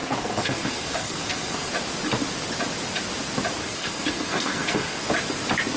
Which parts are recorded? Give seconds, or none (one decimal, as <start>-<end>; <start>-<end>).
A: 1.7-3.6; 5.0-5.8